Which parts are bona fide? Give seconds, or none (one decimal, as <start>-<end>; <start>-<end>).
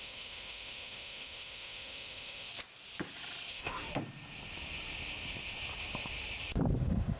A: 2.5-3.5; 3.9-6.8